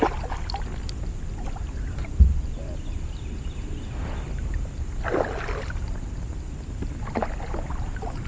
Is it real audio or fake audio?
real